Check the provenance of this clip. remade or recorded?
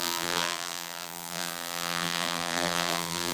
remade